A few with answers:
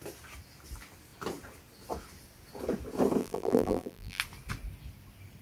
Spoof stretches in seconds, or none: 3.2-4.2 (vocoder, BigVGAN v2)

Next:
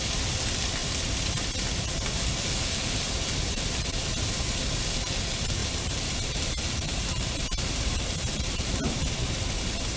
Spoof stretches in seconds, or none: 5.6-9.1 (vocoder, BigVGAN v2)

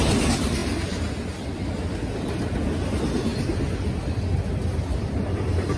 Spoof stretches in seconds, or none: none

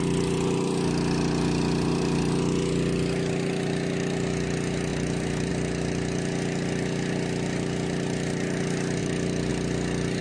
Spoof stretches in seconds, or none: 4.9-5.5 (vocoder, BigVGAN v2); 9.0-9.5